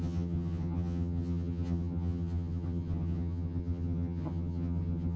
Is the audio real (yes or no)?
no